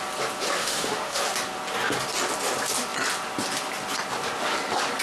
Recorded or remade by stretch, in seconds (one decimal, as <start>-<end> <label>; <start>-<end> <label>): 0.0-0.6 recorded; 0.6-1.2 remade; 1.2-5.0 recorded